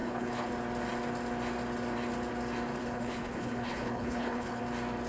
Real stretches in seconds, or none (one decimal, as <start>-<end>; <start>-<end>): 0.5-2.8; 4.6-5.1